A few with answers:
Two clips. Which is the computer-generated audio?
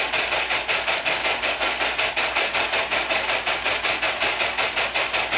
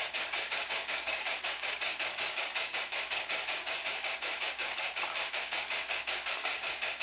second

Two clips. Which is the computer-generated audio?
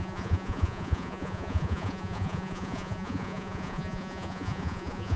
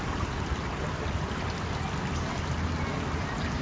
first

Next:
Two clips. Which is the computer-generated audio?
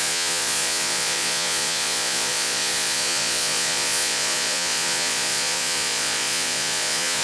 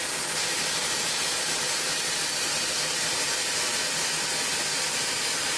first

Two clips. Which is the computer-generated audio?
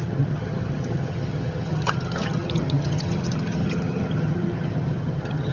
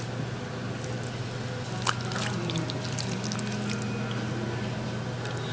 first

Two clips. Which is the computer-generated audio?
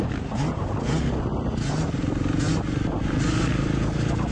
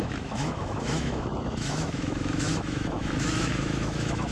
second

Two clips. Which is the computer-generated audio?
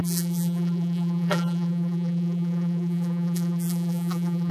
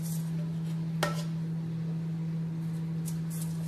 first